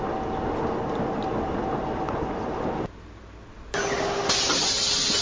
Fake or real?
real